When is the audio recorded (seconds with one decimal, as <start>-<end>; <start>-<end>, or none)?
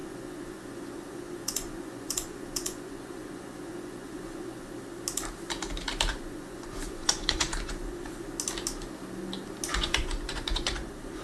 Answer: 4.7-6.1; 8.1-9.7